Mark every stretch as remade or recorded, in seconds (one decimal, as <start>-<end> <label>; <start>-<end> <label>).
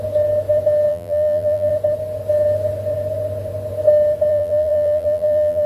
0.0-0.9 recorded; 0.9-1.7 remade; 1.7-4.3 recorded; 4.3-5.7 remade